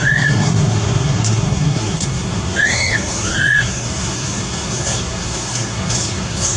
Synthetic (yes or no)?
yes